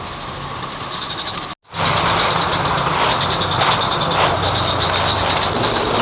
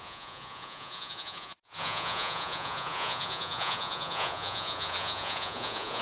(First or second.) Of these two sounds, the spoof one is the second